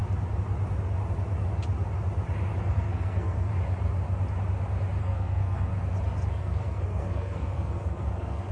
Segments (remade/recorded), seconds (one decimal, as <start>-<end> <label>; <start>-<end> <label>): 0.0-2.6 recorded; 2.6-3.5 remade; 3.5-5.0 recorded; 5.0-5.7 remade; 5.7-6.3 recorded; 6.3-8.5 remade